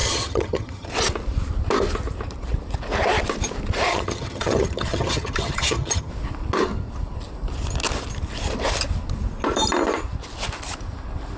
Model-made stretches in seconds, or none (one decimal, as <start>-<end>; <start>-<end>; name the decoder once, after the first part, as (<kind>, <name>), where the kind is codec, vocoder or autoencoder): 0.0-0.9 (vocoder, HiFi-GAN); 3.9-6.1